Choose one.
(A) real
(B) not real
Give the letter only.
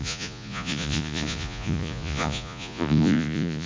B